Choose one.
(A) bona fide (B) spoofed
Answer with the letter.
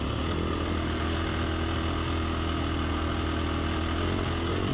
A